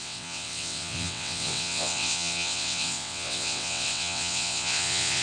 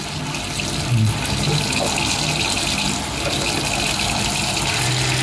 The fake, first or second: first